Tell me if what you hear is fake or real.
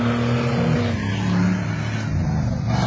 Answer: real